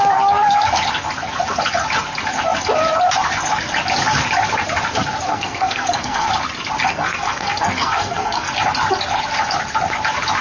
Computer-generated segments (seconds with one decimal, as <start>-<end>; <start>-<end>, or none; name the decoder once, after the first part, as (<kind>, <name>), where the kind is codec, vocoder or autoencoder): 5.3-6.3 (codec, SNAC); 6.9-8.5